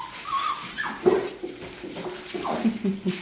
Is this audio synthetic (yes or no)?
no